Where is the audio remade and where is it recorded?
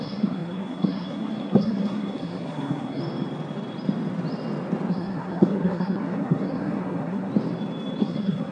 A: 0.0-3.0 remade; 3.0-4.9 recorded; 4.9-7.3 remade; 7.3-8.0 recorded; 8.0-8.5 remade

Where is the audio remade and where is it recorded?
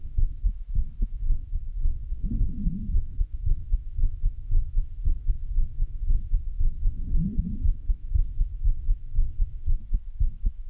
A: 0.0-0.5 remade; 0.5-1.1 recorded; 1.1-9.8 remade; 9.8-10.7 recorded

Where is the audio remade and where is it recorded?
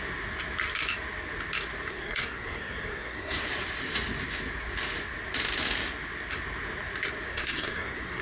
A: 0.0-1.9 recorded; 1.9-3.4 remade; 3.4-7.3 recorded; 7.3-8.2 remade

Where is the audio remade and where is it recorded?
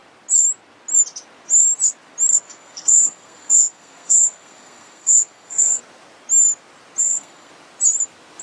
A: 0.0-2.3 recorded; 2.3-5.8 remade; 5.8-7.0 recorded; 7.0-7.5 remade; 7.5-8.4 recorded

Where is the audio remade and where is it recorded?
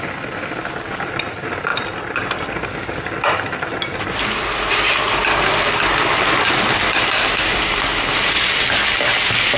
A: 0.0-9.6 recorded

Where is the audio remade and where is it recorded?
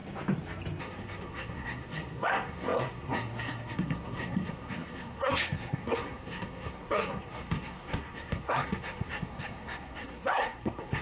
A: 0.0-0.8 recorded; 0.8-11.0 remade